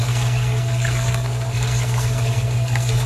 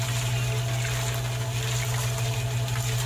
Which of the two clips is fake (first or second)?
first